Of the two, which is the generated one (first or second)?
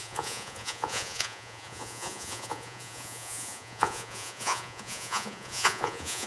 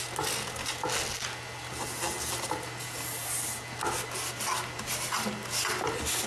first